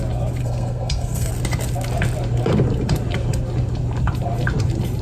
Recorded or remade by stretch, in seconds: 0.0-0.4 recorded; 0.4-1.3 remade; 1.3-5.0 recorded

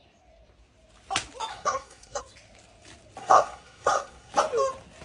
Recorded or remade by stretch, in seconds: 0.0-1.5 recorded; 1.5-2.2 remade; 2.2-3.2 recorded; 3.2-4.3 remade; 4.3-5.0 recorded

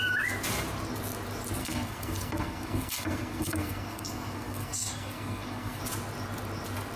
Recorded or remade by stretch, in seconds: 0.0-1.6 recorded; 1.6-5.8 remade; 5.8-7.0 recorded